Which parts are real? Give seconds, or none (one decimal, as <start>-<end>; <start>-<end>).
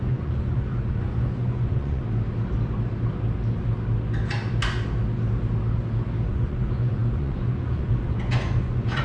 2.0-6.3